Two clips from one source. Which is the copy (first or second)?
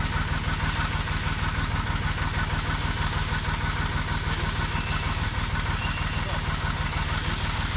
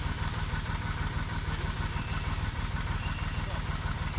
second